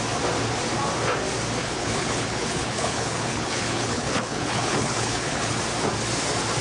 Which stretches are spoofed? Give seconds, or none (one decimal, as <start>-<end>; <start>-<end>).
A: 1.6-5.6